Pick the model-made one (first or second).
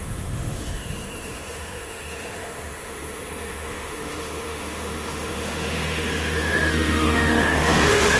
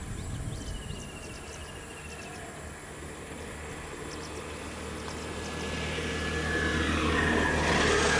first